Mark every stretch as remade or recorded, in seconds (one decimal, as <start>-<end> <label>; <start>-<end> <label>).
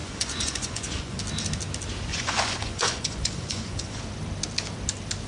0.0-1.2 remade; 1.2-2.1 recorded; 2.1-4.0 remade; 4.0-5.3 recorded